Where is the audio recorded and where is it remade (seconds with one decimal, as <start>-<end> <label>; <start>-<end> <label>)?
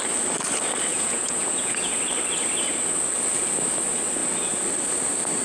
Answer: 0.0-0.9 recorded; 0.9-1.9 remade; 1.9-5.4 recorded